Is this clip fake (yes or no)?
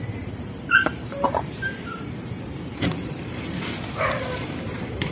yes